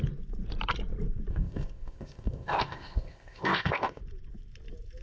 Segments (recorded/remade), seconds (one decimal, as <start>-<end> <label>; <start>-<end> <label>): 0.0-1.3 recorded; 1.3-4.0 remade; 4.0-5.0 recorded